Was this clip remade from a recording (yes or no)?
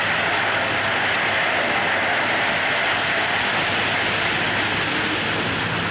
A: no